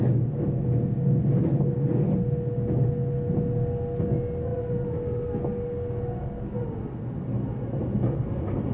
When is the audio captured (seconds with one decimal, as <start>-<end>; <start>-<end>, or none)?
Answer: 0.0-8.7